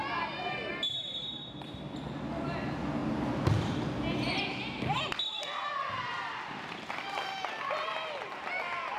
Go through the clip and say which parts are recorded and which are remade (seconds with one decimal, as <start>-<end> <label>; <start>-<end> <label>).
0.0-9.0 recorded